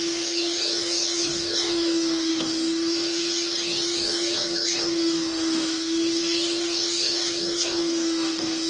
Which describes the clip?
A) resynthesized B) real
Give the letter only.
A